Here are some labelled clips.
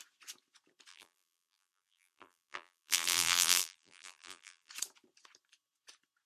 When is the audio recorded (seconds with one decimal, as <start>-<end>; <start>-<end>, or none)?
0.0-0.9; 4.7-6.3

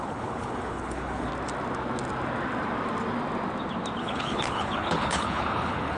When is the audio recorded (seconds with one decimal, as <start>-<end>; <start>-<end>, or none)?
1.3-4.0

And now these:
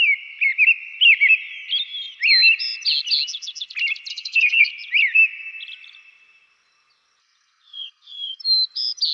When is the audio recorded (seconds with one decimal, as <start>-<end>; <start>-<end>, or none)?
0.0-4.1; 4.7-7.2; 8.4-9.1

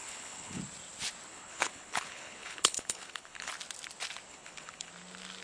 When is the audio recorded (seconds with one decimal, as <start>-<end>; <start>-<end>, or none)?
0.6-1.3; 3.5-4.3; 4.9-5.4

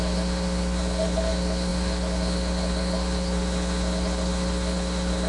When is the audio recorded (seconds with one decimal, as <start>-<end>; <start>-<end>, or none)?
none